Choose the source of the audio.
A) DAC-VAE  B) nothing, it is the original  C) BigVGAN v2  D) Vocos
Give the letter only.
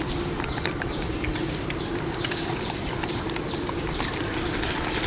C